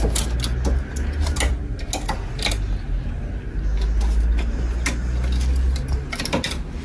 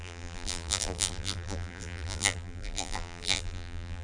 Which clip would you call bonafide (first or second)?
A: first